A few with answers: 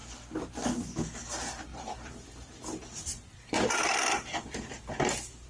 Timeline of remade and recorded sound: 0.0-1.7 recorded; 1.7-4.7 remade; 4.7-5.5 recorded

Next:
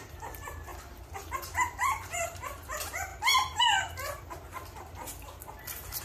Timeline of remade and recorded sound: 0.0-0.7 remade; 0.7-1.2 recorded; 1.2-3.1 remade; 3.1-6.0 recorded